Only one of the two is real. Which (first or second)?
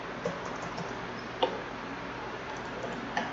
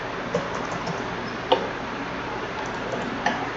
first